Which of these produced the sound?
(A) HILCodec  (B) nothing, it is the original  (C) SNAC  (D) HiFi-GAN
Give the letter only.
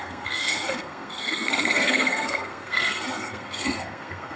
C